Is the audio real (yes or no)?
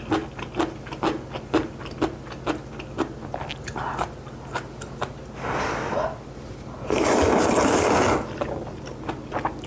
no